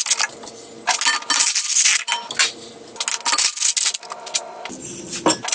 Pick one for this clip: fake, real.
real